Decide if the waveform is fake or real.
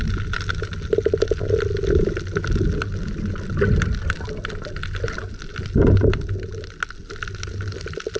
real